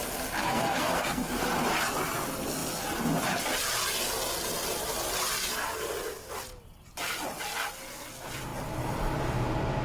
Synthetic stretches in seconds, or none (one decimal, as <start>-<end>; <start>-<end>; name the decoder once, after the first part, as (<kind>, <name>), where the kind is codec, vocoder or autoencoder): 0.4-1.4 (codec, SNAC)